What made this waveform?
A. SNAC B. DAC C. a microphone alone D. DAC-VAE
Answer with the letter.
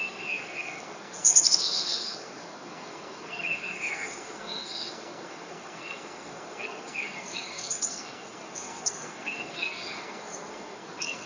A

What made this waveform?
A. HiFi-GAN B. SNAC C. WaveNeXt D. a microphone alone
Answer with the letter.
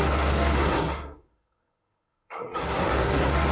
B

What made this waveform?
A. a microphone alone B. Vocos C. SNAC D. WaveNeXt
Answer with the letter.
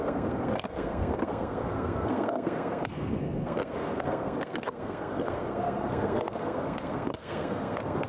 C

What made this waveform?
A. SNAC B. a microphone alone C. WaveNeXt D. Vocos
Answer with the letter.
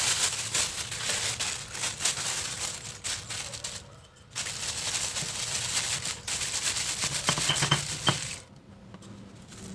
B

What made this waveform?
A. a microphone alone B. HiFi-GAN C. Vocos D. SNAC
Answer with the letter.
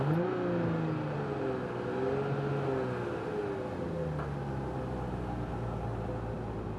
A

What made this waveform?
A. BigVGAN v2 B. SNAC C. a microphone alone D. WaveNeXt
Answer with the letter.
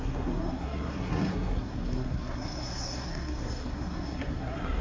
B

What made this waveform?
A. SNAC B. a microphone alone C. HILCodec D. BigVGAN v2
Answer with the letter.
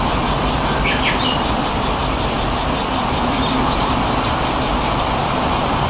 B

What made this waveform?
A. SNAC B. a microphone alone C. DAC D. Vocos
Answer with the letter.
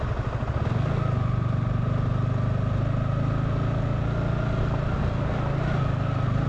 B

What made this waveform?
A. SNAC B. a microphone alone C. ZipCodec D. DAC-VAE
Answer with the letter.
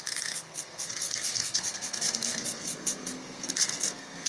A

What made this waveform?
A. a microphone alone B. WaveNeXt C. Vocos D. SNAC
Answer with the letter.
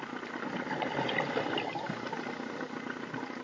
A